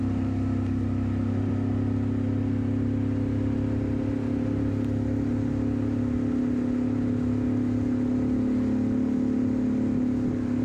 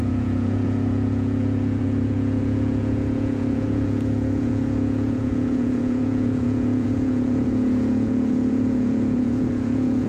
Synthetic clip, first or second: second